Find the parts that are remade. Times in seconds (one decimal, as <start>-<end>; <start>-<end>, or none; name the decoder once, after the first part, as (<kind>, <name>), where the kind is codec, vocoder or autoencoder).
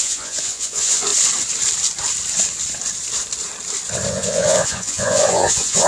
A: 0.0-1.1 (vocoder, Vocos); 4.1-5.9